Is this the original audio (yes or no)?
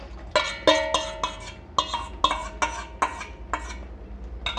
yes